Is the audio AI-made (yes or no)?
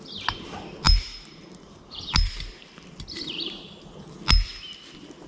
no